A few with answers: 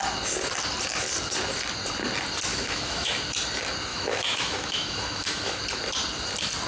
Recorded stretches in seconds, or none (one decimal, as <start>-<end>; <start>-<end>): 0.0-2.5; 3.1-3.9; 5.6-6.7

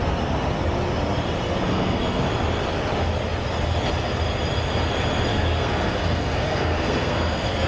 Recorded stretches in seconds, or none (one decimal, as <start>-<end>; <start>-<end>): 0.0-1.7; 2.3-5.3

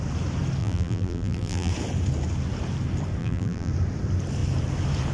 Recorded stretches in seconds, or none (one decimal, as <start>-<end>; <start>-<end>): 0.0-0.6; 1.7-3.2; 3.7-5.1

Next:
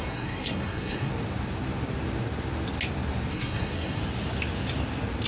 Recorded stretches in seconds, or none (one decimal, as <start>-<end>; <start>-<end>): 1.1-3.3; 4.0-5.3

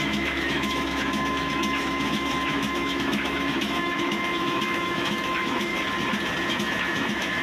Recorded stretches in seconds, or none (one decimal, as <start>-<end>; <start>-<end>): 5.7-6.5